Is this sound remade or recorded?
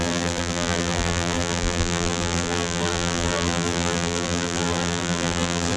remade